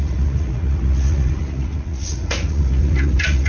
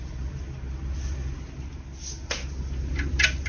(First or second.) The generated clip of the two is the first